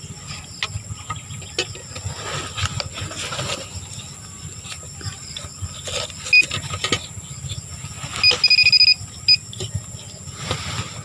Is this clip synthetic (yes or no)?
no